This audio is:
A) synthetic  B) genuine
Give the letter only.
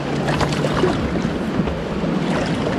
B